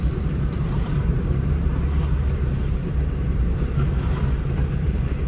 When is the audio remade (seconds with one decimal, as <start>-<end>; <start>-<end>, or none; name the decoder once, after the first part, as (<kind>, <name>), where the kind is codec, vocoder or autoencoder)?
0.0-1.7 (vocoder, BigVGAN v2); 4.5-5.3